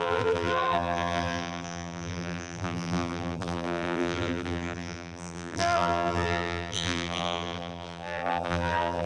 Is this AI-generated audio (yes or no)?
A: yes